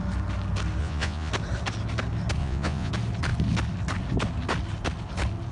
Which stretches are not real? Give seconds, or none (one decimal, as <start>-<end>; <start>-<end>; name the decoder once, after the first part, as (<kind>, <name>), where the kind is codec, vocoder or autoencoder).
0.8-1.3 (vocoder, Vocos); 2.4-2.9